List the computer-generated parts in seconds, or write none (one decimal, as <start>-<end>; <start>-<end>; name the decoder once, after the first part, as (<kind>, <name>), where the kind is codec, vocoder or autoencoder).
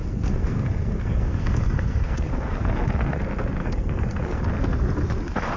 0.0-3.2 (codec, SNAC); 3.6-4.4